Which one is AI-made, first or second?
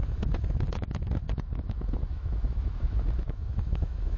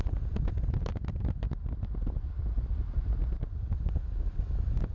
first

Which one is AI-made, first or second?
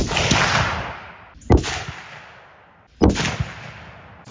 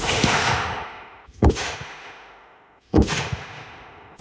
second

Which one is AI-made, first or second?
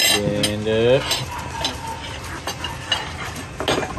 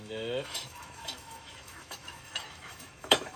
second